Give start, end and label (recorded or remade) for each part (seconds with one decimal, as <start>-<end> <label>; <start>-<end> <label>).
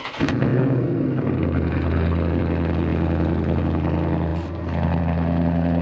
0.0-5.8 remade